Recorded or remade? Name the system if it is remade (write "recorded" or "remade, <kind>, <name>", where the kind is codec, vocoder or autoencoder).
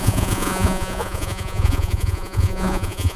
remade, vocoder, Vocos